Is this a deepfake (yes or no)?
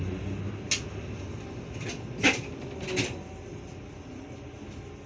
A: no